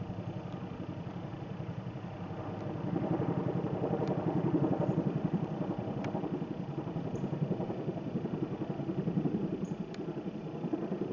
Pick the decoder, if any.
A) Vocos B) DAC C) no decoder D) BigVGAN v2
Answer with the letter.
D